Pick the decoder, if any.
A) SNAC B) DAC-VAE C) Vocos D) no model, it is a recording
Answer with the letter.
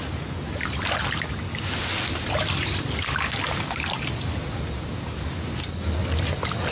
D